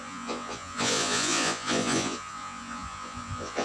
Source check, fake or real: fake